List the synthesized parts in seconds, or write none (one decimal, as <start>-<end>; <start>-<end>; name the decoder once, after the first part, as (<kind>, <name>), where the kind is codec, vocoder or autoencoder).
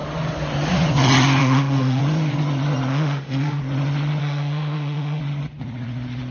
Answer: 1.4-2.0 (autoencoder, DAC-VAE); 2.9-3.6; 4.2-5.2